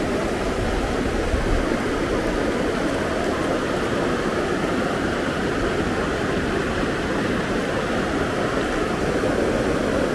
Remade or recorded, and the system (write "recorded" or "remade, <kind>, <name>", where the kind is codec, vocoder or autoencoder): recorded